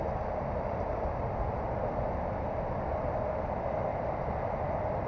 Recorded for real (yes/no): yes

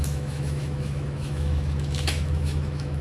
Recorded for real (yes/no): no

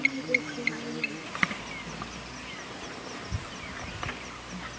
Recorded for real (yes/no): yes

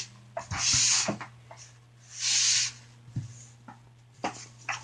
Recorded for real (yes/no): yes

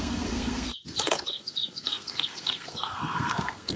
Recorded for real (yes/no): no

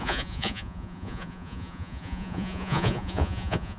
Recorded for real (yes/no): no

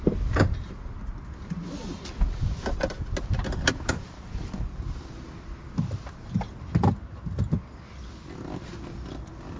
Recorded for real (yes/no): yes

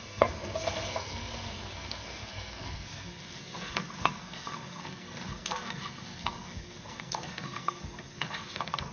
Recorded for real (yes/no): no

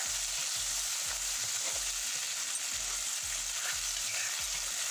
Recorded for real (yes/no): yes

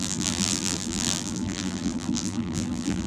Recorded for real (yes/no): no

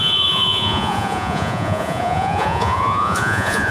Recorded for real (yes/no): no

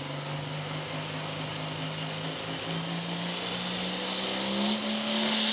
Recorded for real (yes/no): yes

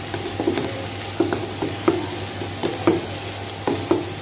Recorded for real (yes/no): yes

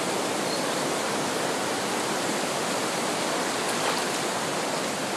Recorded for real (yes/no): yes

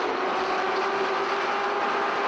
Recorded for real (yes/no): yes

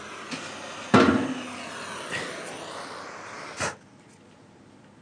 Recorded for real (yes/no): yes